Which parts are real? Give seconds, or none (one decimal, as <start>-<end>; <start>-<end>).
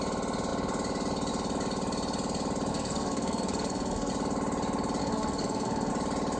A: 0.0-2.7; 4.1-5.0; 5.9-6.4